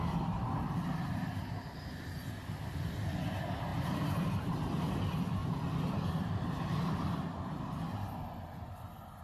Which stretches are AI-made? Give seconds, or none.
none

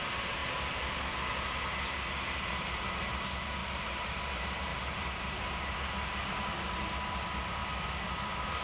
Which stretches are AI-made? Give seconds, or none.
3.6-4.2 (vocoder, BigVGAN v2); 4.7-5.6